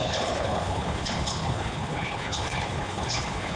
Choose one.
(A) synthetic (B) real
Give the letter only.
A